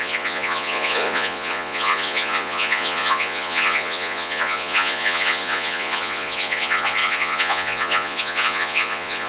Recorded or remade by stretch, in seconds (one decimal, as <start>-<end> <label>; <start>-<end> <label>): 0.0-9.3 remade